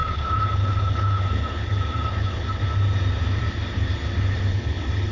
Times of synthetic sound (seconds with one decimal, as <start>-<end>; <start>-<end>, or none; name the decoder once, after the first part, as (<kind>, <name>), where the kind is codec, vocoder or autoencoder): 0.0-2.6 (codec, HILCodec); 4.5-5.1